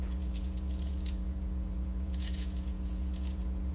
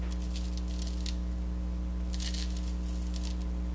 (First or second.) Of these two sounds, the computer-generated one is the first